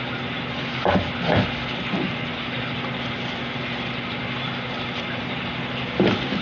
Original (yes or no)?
yes